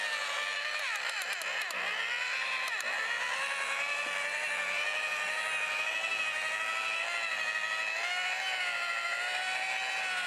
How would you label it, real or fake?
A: real